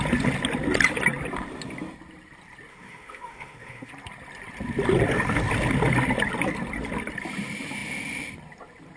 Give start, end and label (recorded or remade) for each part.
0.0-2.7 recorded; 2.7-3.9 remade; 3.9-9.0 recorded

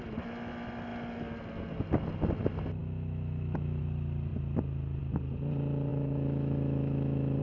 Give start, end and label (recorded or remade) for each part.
0.0-2.8 recorded; 2.8-3.8 remade; 3.8-5.9 recorded; 5.9-7.4 remade

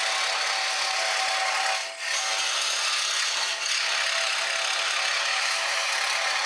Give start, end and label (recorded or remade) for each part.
0.0-5.3 recorded; 5.3-5.9 remade; 5.9-6.5 recorded

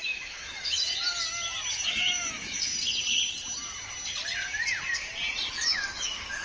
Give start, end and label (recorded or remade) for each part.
0.0-0.9 remade; 0.9-1.7 recorded; 1.7-2.7 remade; 2.7-5.5 recorded; 5.5-6.4 remade

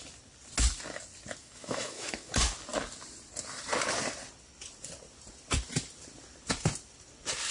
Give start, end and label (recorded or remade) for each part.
0.0-1.4 recorded; 1.4-2.3 remade; 2.3-7.5 recorded

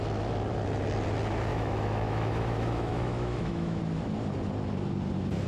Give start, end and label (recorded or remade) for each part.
0.0-1.5 recorded; 1.5-3.8 remade; 3.8-5.5 recorded

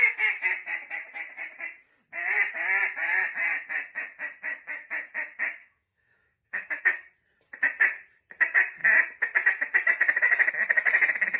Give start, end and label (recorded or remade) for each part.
0.0-5.6 recorded; 5.6-6.8 remade; 6.8-11.4 recorded